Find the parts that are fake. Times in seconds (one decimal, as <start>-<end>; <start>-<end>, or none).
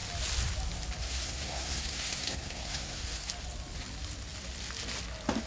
1.0-3.3